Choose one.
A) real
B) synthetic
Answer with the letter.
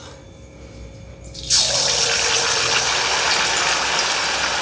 A